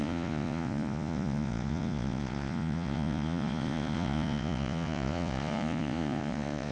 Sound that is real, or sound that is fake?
fake